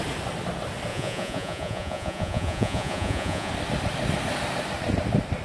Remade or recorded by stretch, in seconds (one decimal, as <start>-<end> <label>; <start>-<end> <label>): 0.0-0.9 recorded; 0.9-3.5 remade; 3.5-5.4 recorded